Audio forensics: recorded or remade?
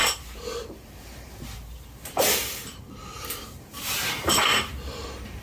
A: remade